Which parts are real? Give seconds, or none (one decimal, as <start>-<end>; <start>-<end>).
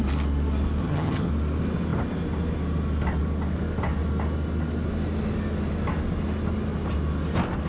0.0-0.8; 1.3-7.7